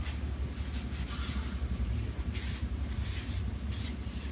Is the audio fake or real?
real